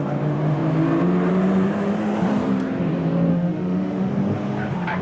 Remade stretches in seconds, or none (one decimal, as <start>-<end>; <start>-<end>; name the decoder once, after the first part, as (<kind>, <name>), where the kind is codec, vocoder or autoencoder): 3.3-4.1 (autoencoder, DAC-VAE)